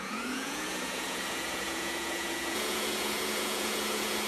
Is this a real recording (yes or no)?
no